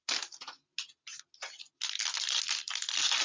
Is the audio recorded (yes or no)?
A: yes